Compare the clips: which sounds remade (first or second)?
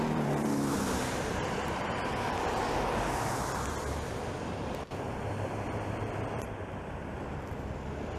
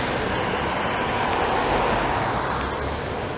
first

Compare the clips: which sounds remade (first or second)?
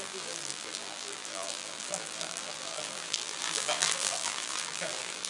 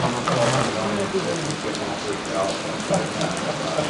first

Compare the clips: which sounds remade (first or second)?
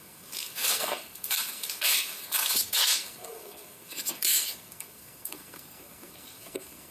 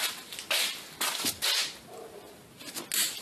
first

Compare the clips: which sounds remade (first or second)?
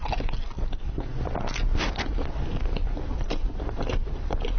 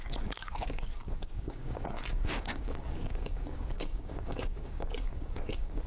second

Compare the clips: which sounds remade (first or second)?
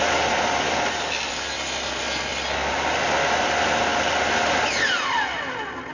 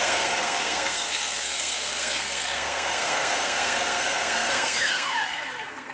second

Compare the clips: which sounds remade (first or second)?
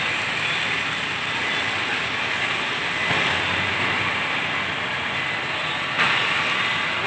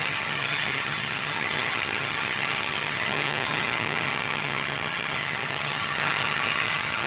second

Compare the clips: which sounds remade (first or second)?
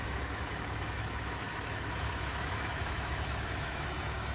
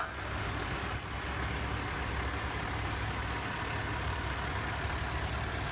first